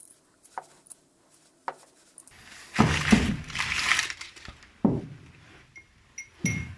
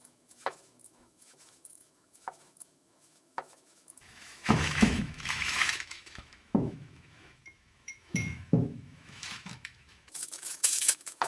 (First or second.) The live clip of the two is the first